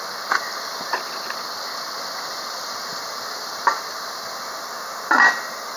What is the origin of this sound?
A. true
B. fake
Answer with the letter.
A